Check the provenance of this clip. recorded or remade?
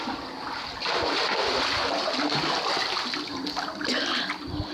recorded